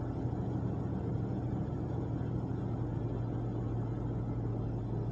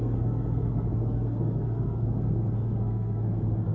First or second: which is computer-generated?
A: second